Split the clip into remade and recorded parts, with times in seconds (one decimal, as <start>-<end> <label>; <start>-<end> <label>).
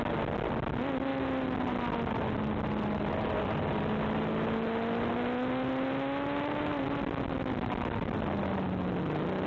0.0-9.5 recorded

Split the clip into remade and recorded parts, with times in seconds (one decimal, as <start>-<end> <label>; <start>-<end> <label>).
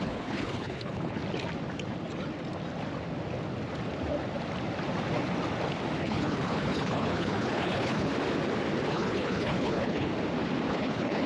0.0-1.2 remade; 1.2-6.0 recorded; 6.0-8.1 remade; 8.1-8.9 recorded; 8.9-10.1 remade; 10.1-10.7 recorded; 10.7-11.3 remade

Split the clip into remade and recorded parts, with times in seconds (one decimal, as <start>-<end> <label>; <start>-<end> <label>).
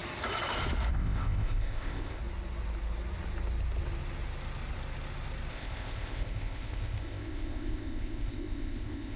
0.0-0.9 recorded; 0.9-2.2 remade; 2.2-5.5 recorded; 5.5-9.2 remade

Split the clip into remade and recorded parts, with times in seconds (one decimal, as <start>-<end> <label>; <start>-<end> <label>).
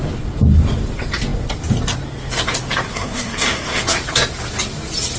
0.0-2.9 recorded; 2.9-3.8 remade; 3.8-5.2 recorded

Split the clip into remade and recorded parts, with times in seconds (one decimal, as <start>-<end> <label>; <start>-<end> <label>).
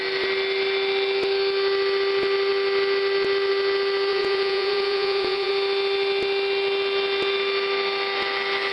0.0-4.1 recorded; 4.1-5.5 remade; 5.5-8.7 recorded